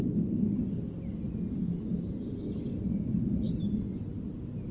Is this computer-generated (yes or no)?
no